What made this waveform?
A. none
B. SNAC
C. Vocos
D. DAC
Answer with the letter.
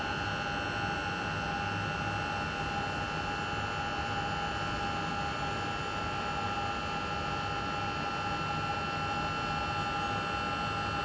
A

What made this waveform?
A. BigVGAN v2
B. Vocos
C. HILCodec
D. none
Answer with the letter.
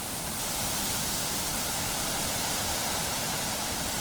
A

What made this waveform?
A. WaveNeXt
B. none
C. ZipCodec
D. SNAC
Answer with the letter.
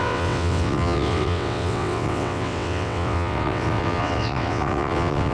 A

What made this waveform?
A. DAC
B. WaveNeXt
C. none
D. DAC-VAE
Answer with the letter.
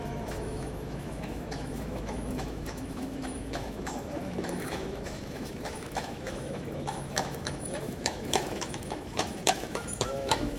D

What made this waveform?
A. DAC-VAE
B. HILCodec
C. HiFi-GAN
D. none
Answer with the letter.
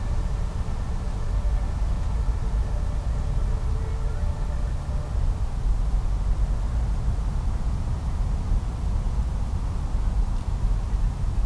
D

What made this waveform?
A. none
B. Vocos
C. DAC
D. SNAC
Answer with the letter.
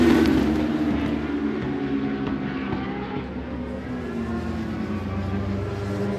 A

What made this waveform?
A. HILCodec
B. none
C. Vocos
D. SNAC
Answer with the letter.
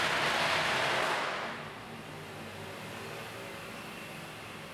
B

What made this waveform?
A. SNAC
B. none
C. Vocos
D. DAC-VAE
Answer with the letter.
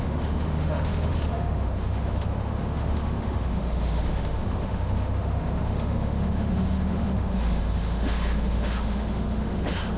D